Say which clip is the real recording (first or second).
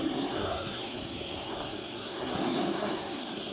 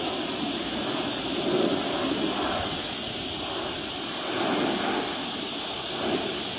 second